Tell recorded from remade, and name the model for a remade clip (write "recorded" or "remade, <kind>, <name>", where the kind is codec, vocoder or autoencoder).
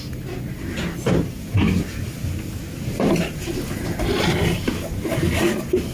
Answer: recorded